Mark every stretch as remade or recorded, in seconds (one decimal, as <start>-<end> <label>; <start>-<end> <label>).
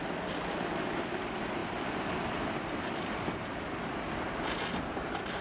0.0-1.6 remade; 1.6-4.8 recorded; 4.8-5.4 remade